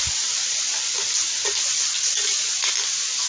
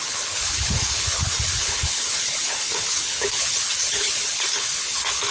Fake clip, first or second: second